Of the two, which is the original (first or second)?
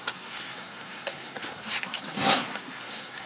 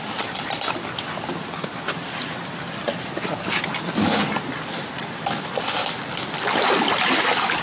second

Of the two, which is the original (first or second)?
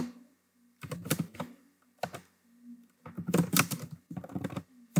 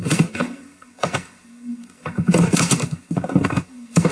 first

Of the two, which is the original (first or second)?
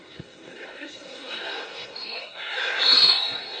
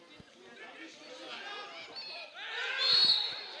second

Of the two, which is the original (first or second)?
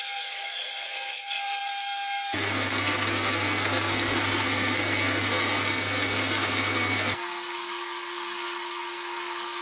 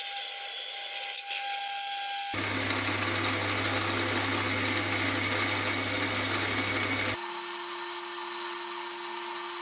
second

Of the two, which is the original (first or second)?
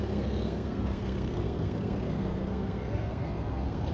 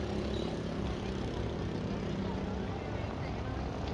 second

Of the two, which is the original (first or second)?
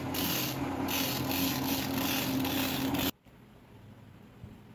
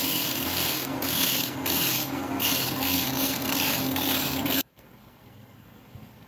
first